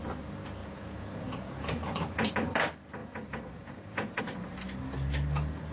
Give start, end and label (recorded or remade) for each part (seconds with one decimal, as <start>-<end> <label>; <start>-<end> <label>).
0.0-0.6 recorded; 0.6-2.3 remade; 2.3-3.0 recorded; 3.0-4.2 remade; 4.2-5.7 recorded